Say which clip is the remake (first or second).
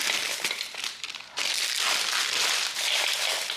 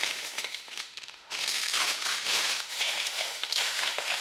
second